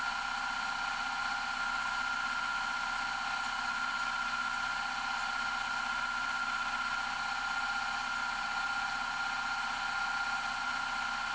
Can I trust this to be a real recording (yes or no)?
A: yes